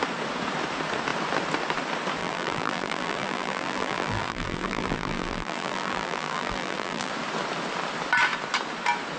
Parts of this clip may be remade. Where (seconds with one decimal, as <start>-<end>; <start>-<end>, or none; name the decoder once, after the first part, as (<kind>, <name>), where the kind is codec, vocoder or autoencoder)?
2.2-7.1 (vocoder, BigVGAN v2)